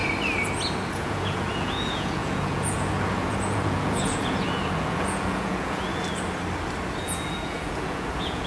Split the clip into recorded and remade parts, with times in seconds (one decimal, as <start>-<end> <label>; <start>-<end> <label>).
0.0-0.9 recorded; 0.9-5.9 remade; 5.9-7.0 recorded; 7.0-8.5 remade